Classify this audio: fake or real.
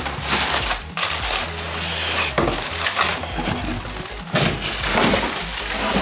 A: real